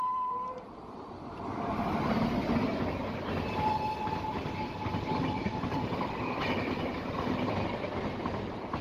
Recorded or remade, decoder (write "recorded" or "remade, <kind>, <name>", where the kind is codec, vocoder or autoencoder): remade, vocoder, BigVGAN v2